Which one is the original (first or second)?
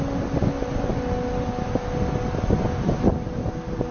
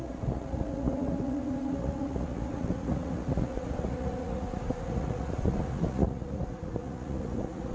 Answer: first